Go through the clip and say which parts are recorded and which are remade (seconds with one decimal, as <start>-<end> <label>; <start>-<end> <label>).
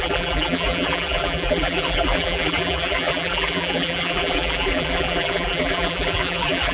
0.0-6.7 remade